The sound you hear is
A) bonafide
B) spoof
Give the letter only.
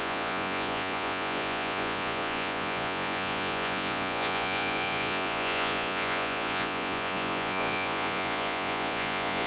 B